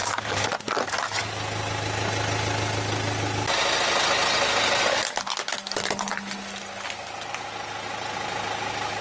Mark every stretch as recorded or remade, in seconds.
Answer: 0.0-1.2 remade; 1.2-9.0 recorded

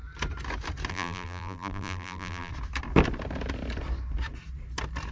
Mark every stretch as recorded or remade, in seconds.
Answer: 0.0-0.9 recorded; 0.9-2.5 remade; 2.5-5.1 recorded

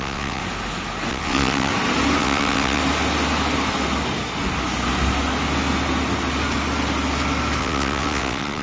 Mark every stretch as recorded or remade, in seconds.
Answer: 0.0-0.4 remade; 0.4-1.1 recorded; 1.1-1.7 remade; 1.7-2.2 recorded; 2.2-2.8 remade; 2.8-7.6 recorded; 7.6-8.6 remade

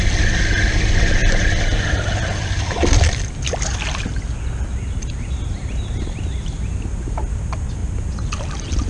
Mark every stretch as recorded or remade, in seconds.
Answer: 0.0-8.9 recorded

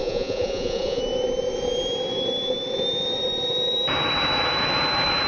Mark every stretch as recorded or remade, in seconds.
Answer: 0.0-1.0 remade; 1.0-5.3 recorded

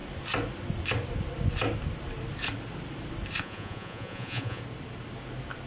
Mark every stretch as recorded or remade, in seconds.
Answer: 0.0-3.4 recorded; 3.4-4.6 remade; 4.6-5.7 recorded

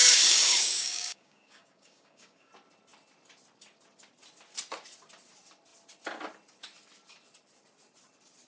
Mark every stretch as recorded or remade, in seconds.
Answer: 0.0-2.5 remade; 2.5-8.5 recorded